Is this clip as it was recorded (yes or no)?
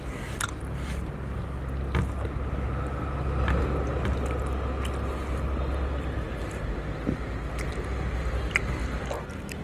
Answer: yes